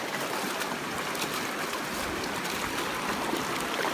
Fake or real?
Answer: real